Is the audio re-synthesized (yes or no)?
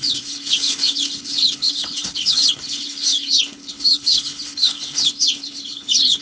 yes